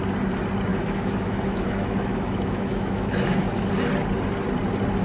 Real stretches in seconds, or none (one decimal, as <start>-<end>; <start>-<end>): 0.0-0.7; 3.7-5.0